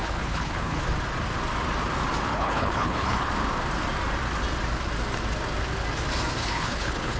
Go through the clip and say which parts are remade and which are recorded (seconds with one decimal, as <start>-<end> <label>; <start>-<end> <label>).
0.0-0.8 remade; 0.8-2.3 recorded; 2.3-3.3 remade; 3.3-6.4 recorded; 6.4-7.2 remade